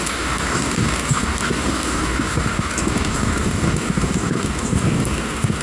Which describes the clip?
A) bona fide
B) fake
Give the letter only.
B